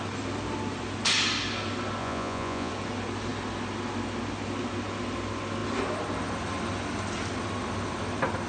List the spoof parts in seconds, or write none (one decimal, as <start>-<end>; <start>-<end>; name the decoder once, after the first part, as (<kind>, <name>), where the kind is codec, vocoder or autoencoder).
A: 2.0-2.7 (vocoder, Vocos)